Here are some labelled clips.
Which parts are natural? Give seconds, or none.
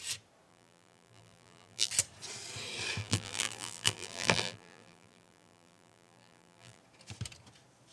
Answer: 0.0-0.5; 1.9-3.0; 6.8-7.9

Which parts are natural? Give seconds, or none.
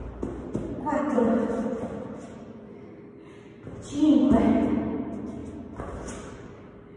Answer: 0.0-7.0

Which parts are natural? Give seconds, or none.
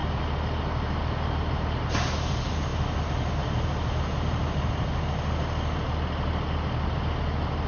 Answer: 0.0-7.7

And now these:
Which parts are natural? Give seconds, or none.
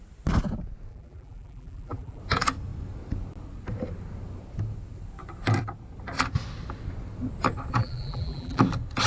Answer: 0.0-0.9; 2.2-7.8; 8.6-9.1